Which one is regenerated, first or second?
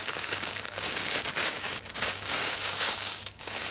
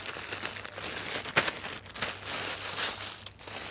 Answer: first